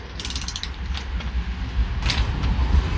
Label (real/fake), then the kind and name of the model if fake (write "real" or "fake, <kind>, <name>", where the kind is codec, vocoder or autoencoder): real